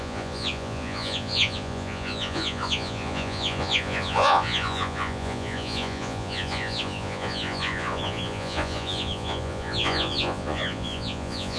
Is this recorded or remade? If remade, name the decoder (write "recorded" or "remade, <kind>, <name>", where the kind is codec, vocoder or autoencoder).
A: remade, vocoder, Vocos